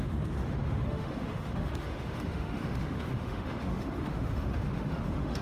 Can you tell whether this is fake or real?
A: fake